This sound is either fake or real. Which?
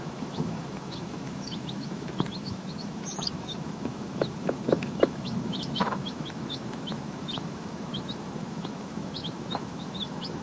fake